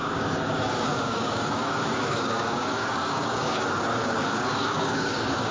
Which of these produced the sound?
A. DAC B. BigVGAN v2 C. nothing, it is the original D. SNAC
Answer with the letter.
A